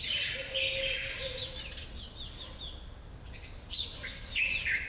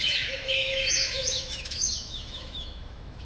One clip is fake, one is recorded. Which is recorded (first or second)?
first